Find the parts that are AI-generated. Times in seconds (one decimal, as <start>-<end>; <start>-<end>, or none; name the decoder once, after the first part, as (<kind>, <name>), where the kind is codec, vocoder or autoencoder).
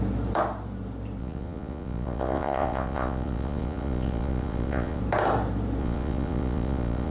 1.2-5.0 (vocoder, Vocos); 5.8-7.1